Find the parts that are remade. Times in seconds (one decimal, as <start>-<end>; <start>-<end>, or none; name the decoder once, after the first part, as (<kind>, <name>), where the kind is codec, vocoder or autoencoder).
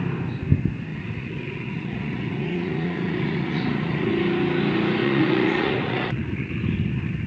0.9-4.1 (vocoder, Vocos); 5.0-6.5